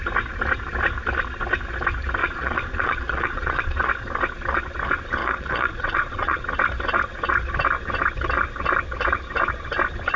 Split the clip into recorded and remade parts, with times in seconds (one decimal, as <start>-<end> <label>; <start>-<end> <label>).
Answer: 0.0-2.2 recorded; 2.2-3.9 remade; 3.9-5.2 recorded; 5.2-6.4 remade; 6.4-10.2 recorded